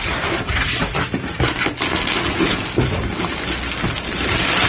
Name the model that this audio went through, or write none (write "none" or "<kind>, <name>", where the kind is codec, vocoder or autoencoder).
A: none